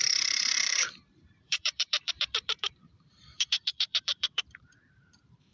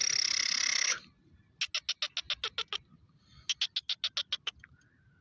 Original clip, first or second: second